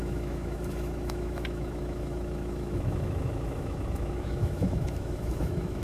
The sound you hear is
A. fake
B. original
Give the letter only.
A